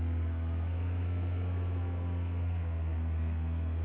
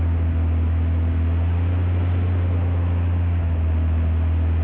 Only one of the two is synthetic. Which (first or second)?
first